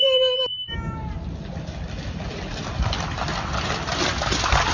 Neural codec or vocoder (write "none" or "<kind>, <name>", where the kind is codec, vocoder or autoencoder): none